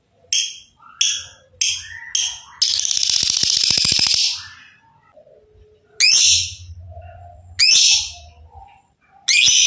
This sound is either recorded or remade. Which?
recorded